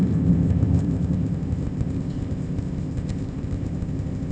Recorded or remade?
remade